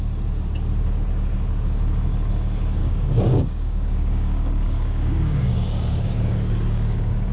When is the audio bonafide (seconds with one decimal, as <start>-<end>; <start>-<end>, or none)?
0.0-2.8